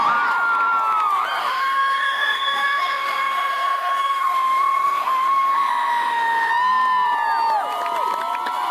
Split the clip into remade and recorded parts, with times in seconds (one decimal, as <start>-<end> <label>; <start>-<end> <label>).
0.0-1.4 recorded; 1.4-6.5 remade; 6.5-8.7 recorded